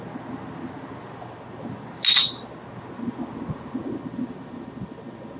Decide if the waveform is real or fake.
real